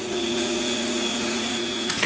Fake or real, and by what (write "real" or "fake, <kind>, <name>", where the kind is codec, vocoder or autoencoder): fake, vocoder, Vocos